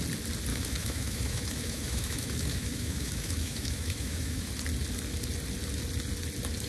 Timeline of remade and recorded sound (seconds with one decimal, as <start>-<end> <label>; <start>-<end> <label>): 0.0-0.5 recorded; 0.5-4.5 remade; 4.5-6.7 recorded